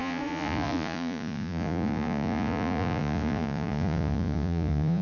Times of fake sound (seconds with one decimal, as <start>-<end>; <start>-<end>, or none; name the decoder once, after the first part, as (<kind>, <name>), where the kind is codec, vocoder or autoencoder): 0.0-5.0 (vocoder, Vocos)